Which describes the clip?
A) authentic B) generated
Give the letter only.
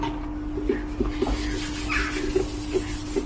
A